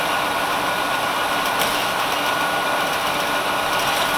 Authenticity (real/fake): real